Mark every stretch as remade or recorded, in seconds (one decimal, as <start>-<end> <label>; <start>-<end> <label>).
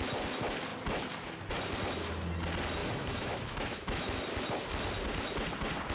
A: 0.0-2.8 recorded; 2.8-4.2 remade; 4.2-5.9 recorded